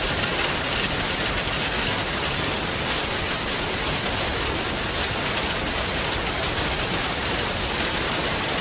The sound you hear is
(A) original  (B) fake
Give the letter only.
A